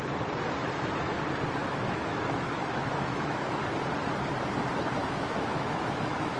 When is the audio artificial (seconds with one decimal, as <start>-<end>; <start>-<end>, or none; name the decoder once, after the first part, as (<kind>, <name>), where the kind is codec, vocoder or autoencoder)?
0.6-1.2 (autoencoder, DAC-VAE); 1.6-3.5; 5.0-6.4